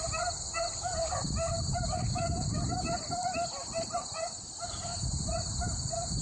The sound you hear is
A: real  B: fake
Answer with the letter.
A